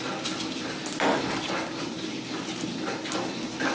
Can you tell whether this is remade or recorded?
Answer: recorded